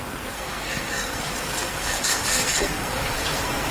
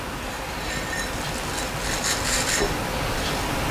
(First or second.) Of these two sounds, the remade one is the first